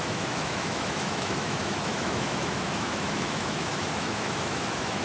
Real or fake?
fake